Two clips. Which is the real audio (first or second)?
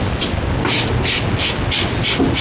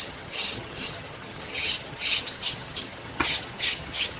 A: first